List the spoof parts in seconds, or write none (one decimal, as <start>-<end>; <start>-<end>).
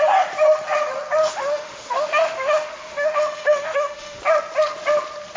1.2-4.2